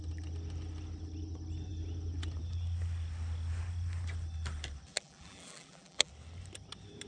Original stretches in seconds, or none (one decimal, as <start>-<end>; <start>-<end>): 0.0-4.9; 6.1-7.1